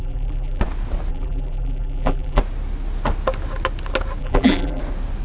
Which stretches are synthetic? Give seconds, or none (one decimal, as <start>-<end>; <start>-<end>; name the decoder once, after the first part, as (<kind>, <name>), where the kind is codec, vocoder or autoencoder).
0.0-0.6 (vocoder, BigVGAN v2); 1.1-2.4; 4.2-4.8